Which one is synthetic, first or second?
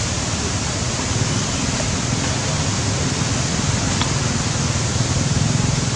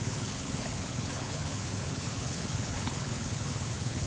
second